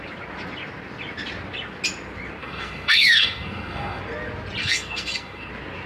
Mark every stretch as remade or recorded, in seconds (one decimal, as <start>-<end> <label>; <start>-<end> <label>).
0.0-2.4 recorded; 2.4-4.0 remade; 4.0-4.6 recorded; 4.6-5.5 remade; 5.5-5.9 recorded